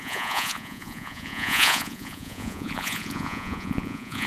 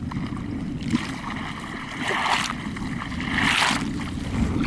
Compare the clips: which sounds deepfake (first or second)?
first